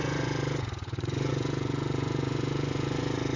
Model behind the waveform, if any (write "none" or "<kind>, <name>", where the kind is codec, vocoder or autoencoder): vocoder, Vocos